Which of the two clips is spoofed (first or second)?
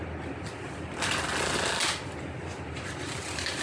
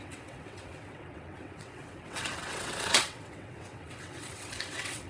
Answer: second